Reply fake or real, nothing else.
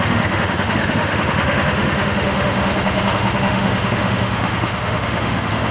fake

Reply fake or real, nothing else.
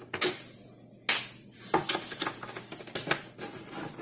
real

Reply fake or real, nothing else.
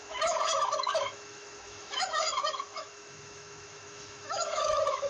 fake